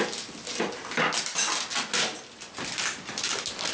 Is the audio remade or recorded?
recorded